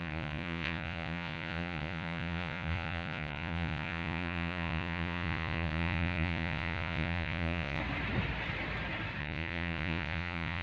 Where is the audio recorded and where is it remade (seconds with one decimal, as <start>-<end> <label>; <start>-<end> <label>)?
0.0-7.8 remade; 7.8-9.2 recorded; 9.2-10.6 remade